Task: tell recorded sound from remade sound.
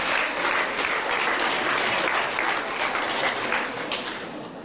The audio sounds recorded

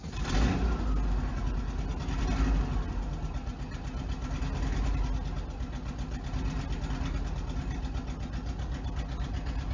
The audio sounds recorded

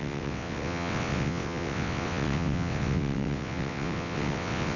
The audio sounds remade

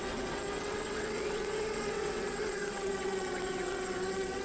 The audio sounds remade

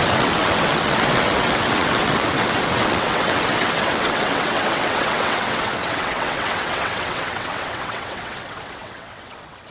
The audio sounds remade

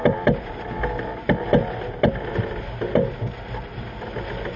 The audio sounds recorded